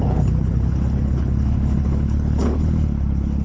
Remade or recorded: remade